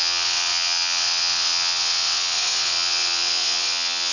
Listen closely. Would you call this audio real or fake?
fake